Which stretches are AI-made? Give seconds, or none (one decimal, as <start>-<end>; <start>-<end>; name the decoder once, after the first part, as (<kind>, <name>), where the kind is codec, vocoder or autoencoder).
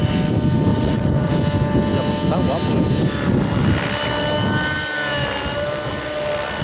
0.7-1.3 (vocoder, WaveNeXt)